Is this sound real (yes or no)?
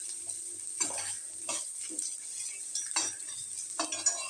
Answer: yes